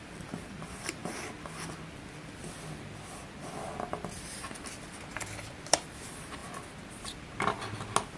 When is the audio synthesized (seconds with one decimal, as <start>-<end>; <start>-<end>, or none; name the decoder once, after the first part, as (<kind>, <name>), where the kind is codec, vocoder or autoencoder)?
0.0-1.0 (vocoder, BigVGAN v2); 5.9-6.4